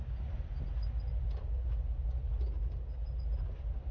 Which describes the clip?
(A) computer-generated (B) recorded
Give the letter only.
B